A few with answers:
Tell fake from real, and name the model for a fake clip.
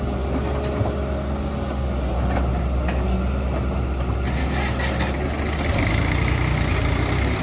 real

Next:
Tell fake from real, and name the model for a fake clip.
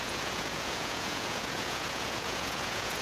fake, vocoder, Vocos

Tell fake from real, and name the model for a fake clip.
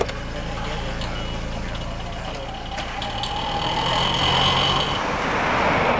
real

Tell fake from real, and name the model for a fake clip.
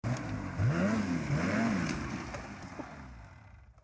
real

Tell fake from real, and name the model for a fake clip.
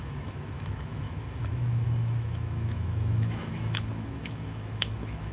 fake, autoencoder, DAC-VAE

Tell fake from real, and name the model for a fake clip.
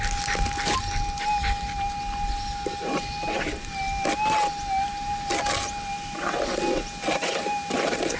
real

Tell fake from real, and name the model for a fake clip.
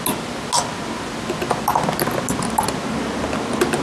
real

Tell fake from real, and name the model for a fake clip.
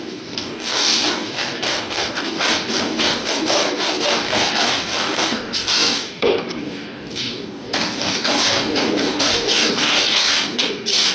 fake, codec, DAC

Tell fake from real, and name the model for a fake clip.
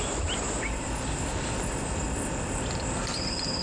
real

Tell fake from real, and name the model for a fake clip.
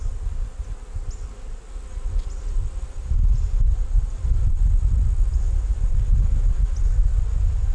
real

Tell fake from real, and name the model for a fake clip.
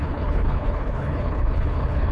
fake, codec, HILCodec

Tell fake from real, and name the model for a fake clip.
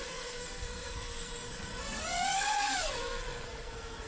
fake, codec, SNAC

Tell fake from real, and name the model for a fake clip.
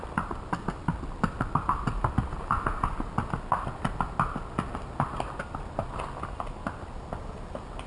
real